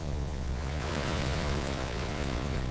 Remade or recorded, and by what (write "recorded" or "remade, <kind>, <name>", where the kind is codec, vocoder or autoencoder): remade, vocoder, Vocos